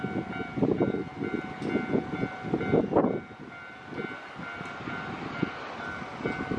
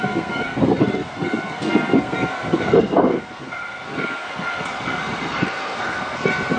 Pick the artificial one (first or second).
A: second